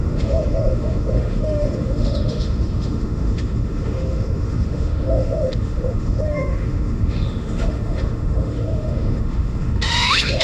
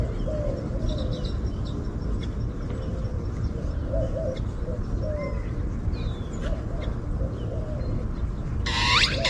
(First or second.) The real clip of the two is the second